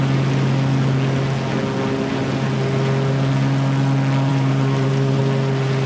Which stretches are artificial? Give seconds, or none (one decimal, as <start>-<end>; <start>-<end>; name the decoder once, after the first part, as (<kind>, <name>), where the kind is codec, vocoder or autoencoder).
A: 4.3-5.2 (vocoder, BigVGAN v2)